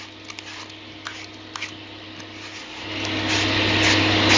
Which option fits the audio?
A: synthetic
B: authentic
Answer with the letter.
B